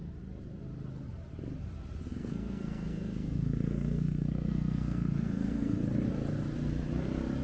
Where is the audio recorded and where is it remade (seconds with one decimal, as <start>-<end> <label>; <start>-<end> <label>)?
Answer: 0.0-2.1 recorded; 2.1-5.8 remade; 5.8-7.4 recorded